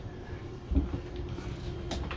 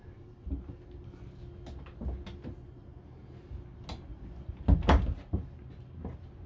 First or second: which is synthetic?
first